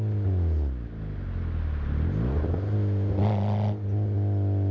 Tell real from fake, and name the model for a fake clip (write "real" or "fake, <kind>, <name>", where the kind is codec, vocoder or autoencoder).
real